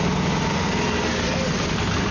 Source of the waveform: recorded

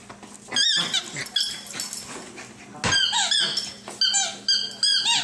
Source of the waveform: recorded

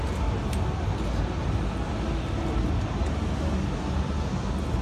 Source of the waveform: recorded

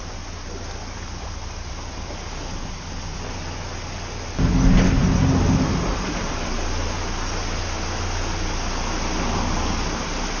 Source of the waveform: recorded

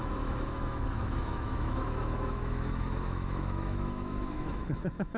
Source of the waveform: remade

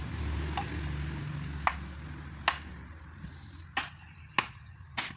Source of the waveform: recorded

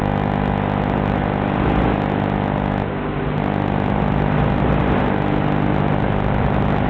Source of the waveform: recorded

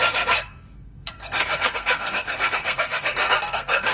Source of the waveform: remade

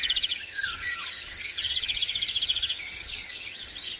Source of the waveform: remade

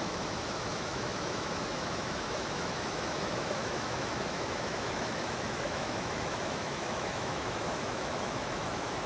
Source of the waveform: remade